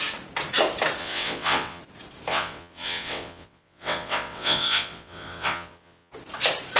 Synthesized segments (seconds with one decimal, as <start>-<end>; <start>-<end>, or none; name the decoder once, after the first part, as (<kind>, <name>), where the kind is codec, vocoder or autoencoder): 1.0-1.8 (vocoder, WaveNeXt); 2.3-6.1